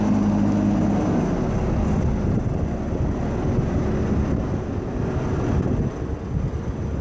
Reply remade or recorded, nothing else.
recorded